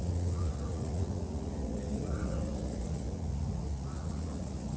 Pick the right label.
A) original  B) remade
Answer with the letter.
B